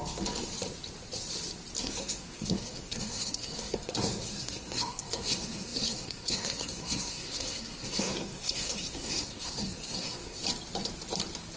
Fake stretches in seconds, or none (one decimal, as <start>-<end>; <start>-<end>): 1.8-10.4